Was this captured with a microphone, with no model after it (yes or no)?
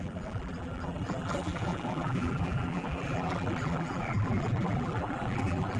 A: no